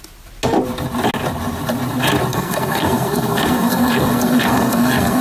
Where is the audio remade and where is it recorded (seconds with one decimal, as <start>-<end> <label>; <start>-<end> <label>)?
0.0-2.3 recorded; 2.3-5.2 remade